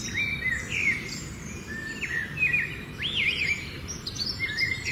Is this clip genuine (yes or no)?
no